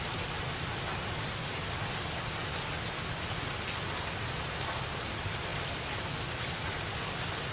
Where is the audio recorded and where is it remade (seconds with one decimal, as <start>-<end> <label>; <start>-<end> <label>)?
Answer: 0.0-7.5 recorded